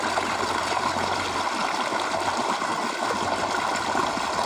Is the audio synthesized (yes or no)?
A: no